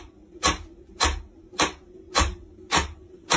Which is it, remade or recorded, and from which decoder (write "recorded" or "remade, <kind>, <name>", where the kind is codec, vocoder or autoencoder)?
recorded